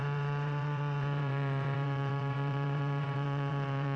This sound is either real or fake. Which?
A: fake